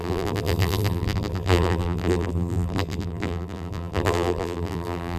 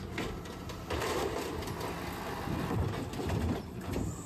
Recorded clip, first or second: second